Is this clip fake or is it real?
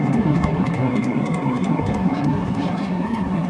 fake